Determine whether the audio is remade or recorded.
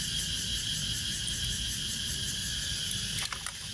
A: recorded